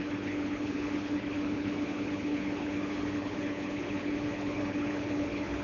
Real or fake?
fake